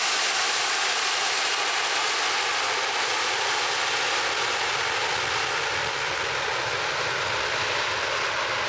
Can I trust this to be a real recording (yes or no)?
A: yes